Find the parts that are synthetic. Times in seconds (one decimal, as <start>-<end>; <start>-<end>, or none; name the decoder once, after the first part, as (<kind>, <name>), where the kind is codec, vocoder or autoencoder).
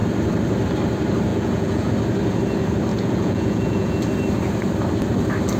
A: 1.3-1.9 (vocoder, Vocos); 2.9-3.9